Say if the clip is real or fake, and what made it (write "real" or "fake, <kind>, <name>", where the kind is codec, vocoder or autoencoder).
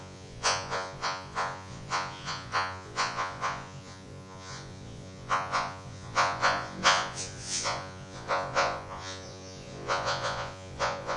fake, vocoder, Vocos